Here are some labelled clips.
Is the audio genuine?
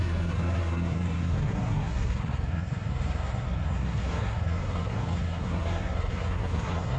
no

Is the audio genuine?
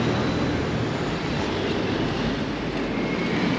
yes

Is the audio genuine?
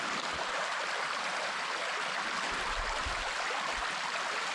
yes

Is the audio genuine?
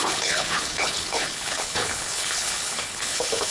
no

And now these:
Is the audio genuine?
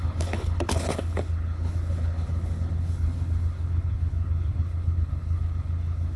no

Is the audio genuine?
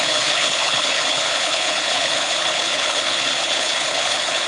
no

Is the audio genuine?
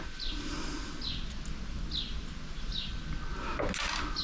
yes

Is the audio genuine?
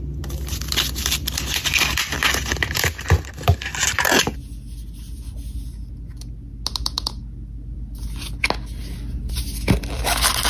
yes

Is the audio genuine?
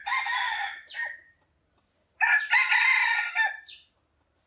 yes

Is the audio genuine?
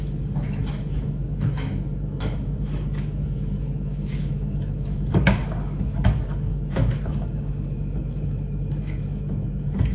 no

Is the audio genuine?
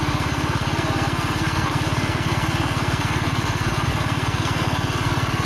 no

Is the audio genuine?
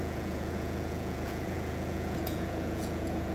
no